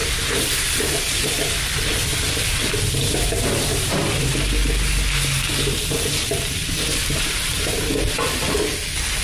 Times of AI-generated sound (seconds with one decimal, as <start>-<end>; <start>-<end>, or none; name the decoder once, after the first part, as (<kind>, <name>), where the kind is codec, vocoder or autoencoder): 0.0-1.0 (vocoder, BigVGAN v2); 3.0-4.3; 6.6-7.7